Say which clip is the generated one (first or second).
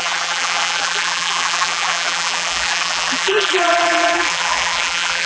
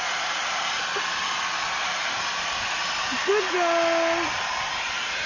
first